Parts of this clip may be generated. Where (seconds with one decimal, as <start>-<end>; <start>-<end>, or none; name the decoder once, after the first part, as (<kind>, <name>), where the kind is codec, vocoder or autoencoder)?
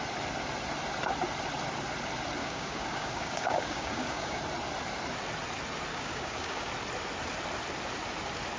2.4-4.4 (codec, DAC); 5.9-6.7